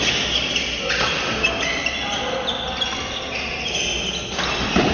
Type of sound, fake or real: real